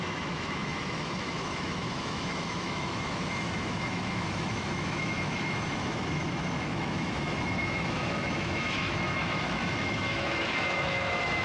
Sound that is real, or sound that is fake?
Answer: fake